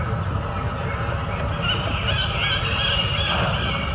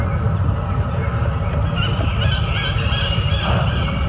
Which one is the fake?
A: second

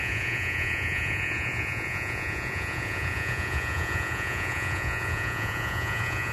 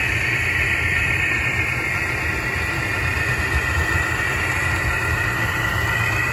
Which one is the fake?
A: first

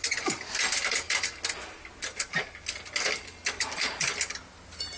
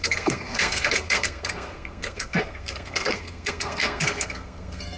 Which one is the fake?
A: second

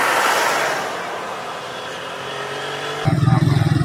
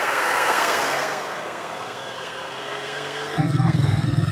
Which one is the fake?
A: second